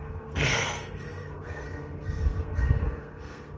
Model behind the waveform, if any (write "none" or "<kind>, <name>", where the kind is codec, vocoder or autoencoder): codec, SNAC